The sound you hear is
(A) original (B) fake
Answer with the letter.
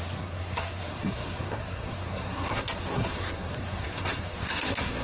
B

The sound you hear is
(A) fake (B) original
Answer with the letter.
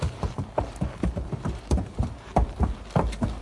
A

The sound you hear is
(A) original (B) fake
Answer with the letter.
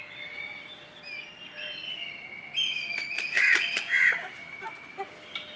A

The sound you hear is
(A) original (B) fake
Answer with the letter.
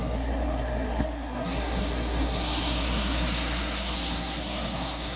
B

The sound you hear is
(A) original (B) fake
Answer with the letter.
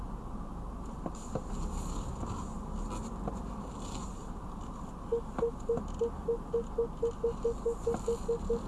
A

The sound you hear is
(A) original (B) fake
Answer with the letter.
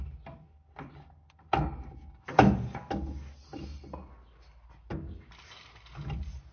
A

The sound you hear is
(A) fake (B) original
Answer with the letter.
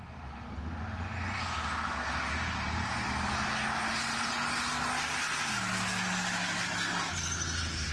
B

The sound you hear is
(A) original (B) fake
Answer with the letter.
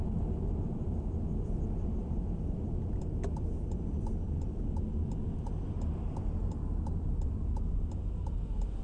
A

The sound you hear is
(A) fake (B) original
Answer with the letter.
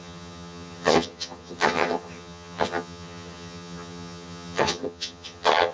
A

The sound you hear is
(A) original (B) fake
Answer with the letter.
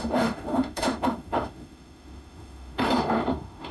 B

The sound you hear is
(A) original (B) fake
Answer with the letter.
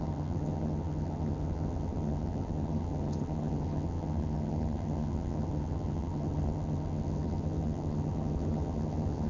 B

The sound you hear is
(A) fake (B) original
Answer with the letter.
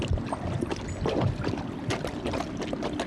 B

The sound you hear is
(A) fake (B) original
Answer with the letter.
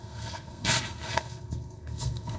A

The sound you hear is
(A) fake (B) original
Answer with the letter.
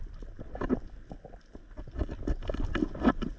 B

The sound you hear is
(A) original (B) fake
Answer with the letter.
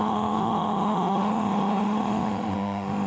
B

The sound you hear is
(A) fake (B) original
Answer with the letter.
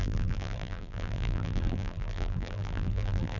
A